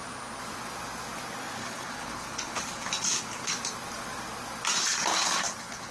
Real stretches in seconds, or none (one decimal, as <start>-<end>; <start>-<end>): 0.0-1.6; 3.5-5.1